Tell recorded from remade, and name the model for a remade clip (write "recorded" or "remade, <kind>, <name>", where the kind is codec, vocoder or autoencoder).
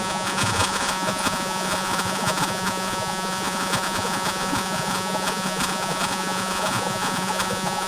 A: remade, vocoder, Vocos